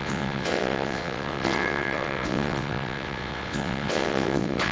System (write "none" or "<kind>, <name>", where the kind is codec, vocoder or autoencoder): vocoder, WaveNeXt